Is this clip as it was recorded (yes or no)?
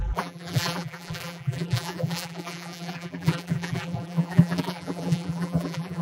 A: no